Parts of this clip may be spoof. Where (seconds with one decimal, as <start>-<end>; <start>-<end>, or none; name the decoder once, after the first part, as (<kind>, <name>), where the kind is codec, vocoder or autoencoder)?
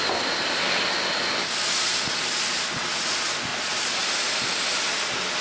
none